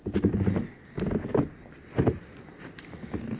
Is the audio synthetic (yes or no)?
yes